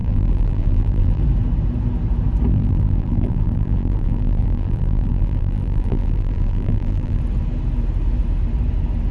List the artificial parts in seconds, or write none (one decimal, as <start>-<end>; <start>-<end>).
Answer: 0.0-1.2; 2.5-7.2